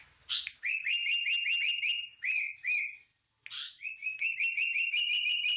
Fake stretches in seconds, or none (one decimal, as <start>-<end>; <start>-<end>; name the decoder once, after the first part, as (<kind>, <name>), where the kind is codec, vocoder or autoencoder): none

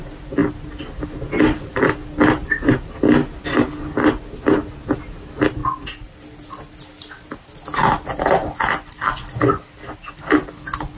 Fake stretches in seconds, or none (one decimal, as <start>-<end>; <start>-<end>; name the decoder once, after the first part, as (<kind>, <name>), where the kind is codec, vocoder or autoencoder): none

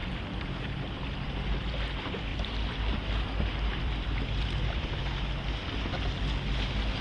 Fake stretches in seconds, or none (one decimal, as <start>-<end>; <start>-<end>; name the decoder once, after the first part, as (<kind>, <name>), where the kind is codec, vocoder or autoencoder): 0.0-1.3 (vocoder, BigVGAN v2); 2.3-5.0

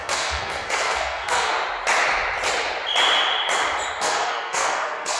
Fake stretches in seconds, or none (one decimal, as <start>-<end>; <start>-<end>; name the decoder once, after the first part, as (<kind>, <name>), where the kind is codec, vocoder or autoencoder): 0.0-1.5 (codec, SNAC); 4.0-5.2

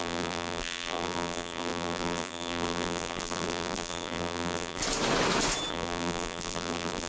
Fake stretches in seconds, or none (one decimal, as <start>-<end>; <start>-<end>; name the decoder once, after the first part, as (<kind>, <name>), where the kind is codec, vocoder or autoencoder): 0.0-4.8 (vocoder, BigVGAN v2); 5.7-7.1